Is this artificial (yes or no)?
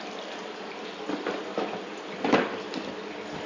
no